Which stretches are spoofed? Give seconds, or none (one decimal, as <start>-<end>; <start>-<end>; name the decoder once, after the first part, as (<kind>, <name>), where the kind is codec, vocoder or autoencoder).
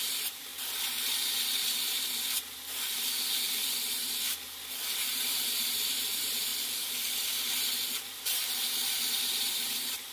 0.0-0.5 (vocoder, BigVGAN v2); 5.6-6.5; 8.2-10.1